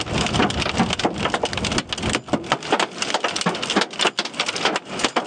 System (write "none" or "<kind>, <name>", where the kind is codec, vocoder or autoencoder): none